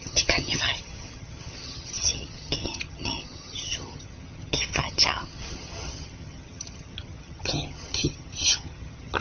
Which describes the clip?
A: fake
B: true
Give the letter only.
A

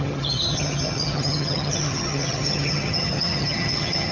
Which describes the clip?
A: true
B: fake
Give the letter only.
B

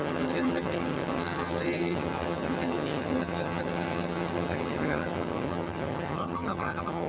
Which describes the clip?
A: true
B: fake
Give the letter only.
B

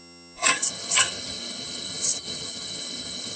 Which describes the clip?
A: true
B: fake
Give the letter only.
B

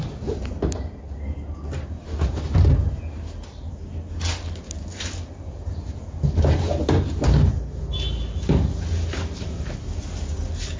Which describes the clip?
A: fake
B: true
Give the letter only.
B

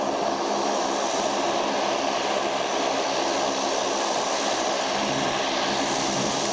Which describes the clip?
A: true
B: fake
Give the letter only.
A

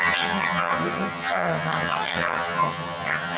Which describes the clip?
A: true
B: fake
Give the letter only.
B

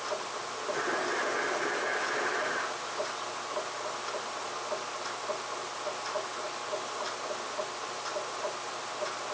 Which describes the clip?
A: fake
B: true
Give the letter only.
B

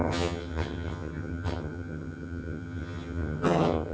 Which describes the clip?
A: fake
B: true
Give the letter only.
A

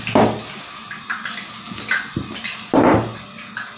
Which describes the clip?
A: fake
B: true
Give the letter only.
B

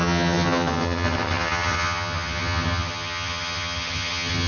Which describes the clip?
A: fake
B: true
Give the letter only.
A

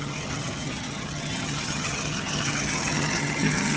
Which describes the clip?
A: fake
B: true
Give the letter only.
A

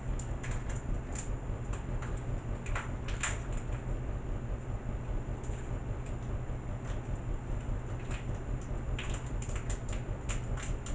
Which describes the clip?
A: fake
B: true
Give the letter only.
B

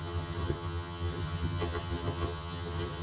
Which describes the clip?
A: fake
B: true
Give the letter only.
A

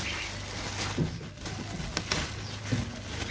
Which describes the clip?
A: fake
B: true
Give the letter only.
B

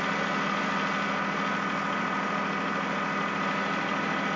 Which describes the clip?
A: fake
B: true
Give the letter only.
B